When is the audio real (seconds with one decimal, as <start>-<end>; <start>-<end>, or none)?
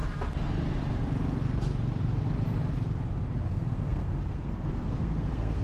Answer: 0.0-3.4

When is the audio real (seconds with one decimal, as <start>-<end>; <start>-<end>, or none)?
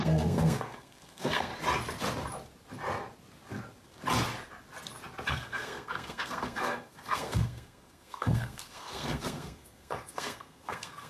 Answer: 1.5-5.3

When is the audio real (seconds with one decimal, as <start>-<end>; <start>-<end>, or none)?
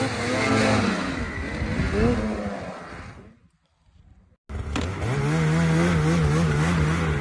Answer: 0.0-7.2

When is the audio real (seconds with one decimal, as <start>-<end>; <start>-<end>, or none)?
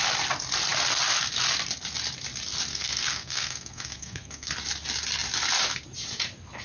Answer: 0.0-2.7; 4.5-6.6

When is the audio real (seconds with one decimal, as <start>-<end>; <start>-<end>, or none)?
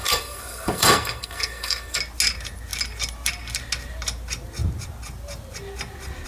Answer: 2.0-6.3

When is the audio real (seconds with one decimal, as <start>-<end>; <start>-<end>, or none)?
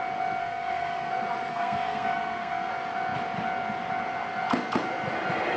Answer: 0.0-0.4; 1.1-1.5; 2.7-5.6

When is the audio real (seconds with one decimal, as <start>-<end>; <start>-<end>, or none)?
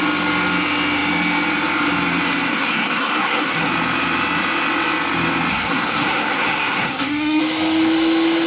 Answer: 0.0-2.5; 3.7-5.5; 7.4-8.5